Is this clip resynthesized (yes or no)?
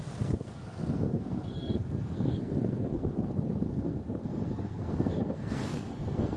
yes